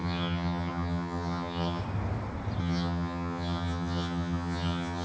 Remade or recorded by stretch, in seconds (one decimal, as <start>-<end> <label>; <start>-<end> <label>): 0.0-1.8 remade; 1.8-2.6 recorded; 2.6-5.0 remade